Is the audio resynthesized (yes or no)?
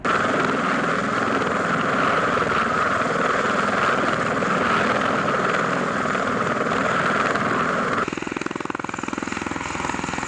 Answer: no